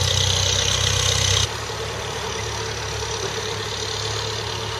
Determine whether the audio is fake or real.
real